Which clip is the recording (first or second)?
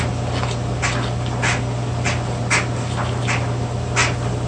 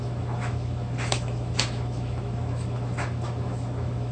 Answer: first